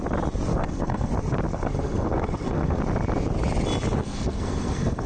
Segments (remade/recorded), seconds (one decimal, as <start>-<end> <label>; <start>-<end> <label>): 0.0-0.5 recorded; 0.5-1.1 remade; 1.1-1.5 recorded; 1.5-2.8 remade; 2.8-4.0 recorded; 4.0-5.1 remade